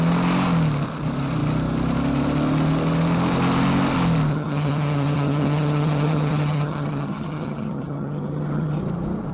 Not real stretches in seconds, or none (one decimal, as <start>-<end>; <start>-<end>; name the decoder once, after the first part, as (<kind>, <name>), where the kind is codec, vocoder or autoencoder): 4.3-8.8 (vocoder, HiFi-GAN)